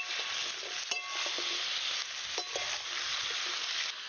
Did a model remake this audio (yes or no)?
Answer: no